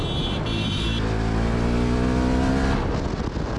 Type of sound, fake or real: real